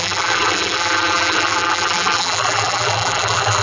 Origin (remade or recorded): remade